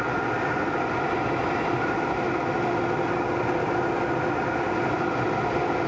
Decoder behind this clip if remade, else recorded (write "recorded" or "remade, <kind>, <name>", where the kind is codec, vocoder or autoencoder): recorded